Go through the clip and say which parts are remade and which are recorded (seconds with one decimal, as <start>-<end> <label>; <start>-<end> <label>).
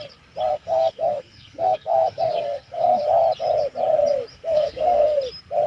0.0-0.5 recorded; 0.5-3.0 remade; 3.0-4.3 recorded; 4.3-5.2 remade; 5.2-5.7 recorded